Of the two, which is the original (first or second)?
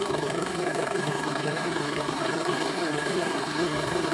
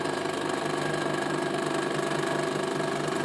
second